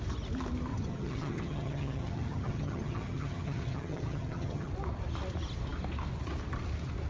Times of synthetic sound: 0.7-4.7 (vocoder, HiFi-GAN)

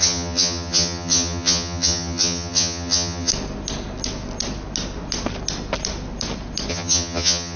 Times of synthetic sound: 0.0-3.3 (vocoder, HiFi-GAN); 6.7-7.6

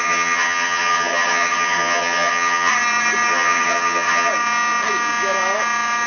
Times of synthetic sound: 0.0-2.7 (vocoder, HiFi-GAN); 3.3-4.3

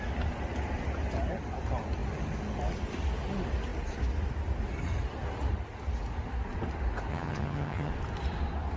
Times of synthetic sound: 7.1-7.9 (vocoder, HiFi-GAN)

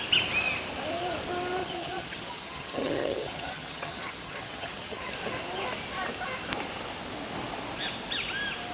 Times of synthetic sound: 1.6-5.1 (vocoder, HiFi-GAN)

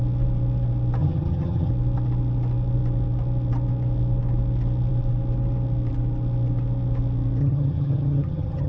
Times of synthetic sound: 1.0-1.7 (vocoder, HiFi-GAN); 7.4-8.7

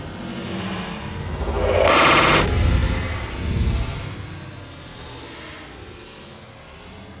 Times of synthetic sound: none